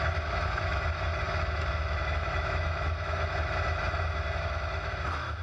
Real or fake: fake